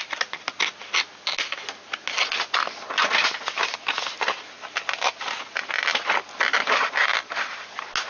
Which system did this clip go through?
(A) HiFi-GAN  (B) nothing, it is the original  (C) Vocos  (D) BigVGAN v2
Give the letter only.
B